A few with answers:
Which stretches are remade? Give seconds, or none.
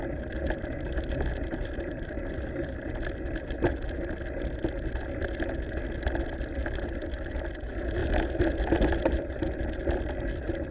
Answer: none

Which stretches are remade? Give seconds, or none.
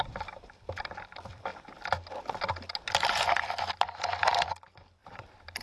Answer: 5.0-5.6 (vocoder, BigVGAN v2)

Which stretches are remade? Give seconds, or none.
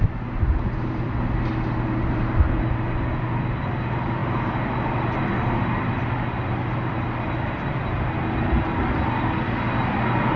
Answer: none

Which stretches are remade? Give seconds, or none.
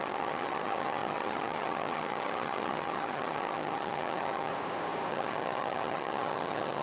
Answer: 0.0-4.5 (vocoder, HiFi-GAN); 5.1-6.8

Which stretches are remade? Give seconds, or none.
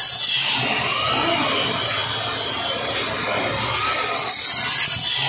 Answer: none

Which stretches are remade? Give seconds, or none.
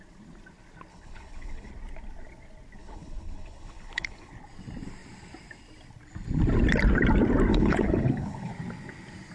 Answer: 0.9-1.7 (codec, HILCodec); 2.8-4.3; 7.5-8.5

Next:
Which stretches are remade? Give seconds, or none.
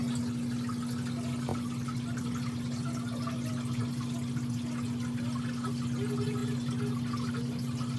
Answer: none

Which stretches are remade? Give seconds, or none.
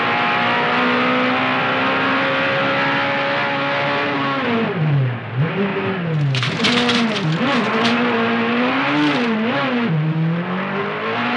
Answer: none